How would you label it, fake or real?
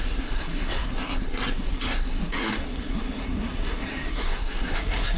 fake